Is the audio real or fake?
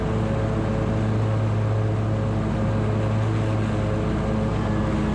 real